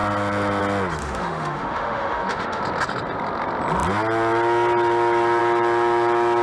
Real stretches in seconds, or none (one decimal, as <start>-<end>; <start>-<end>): 0.0-1.0; 2.6-6.4